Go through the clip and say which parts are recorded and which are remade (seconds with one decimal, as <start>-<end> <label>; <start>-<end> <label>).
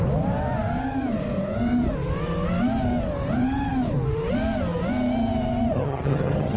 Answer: 0.0-5.7 recorded; 5.7-6.6 remade